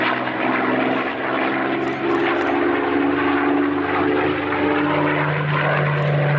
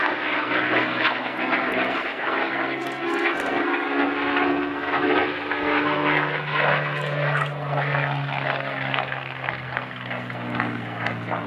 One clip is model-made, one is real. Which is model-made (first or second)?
second